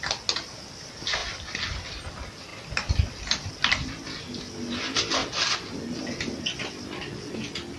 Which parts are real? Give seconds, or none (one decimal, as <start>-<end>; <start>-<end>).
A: 0.0-1.2; 2.1-2.5; 4.3-7.8